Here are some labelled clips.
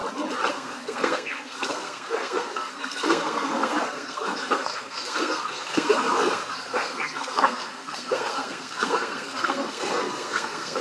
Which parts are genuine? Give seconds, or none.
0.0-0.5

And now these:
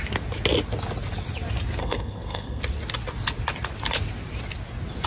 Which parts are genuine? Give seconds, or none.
0.0-1.8; 2.6-5.1

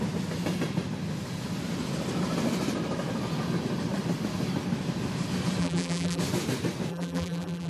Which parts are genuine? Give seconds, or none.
0.0-5.6; 6.2-6.9

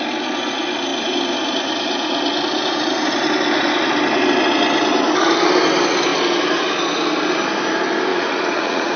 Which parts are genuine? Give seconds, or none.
0.0-8.1

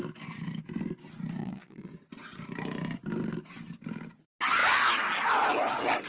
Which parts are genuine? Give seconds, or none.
0.0-1.4; 1.9-6.1

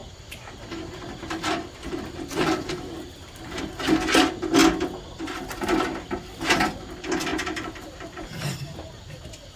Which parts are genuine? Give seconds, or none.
3.6-7.3

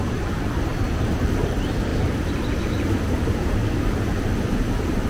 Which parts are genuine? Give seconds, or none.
3.6-4.4